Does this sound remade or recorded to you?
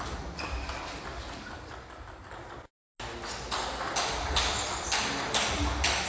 recorded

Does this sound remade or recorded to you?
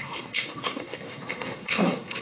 remade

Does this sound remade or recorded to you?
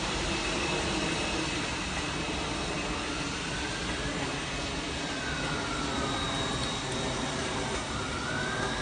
recorded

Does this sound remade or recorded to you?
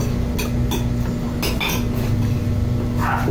recorded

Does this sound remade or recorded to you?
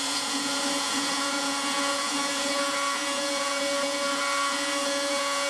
remade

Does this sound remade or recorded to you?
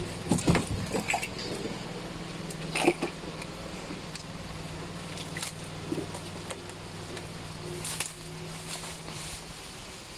recorded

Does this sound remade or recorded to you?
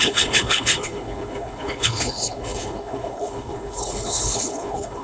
remade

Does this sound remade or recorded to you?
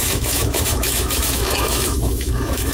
remade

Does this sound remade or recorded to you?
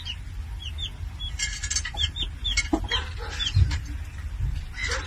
recorded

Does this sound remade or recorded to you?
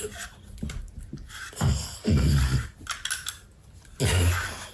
recorded